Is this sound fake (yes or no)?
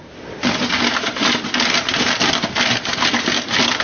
no